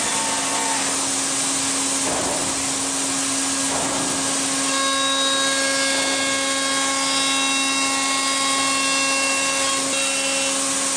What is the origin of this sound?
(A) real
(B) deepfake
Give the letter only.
A